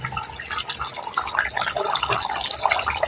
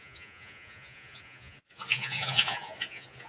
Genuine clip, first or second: first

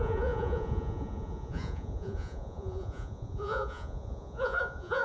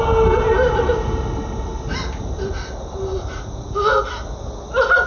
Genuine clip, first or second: second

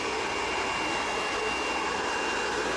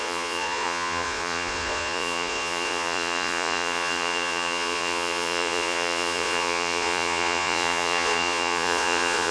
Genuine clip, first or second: first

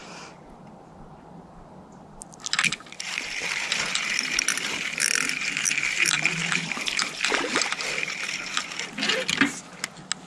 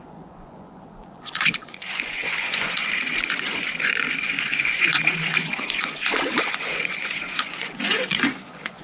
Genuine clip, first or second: first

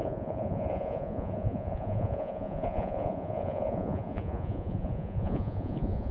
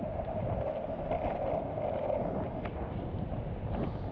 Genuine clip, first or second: second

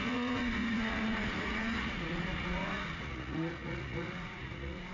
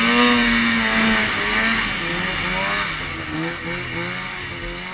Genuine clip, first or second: second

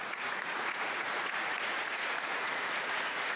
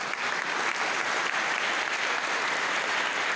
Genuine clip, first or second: second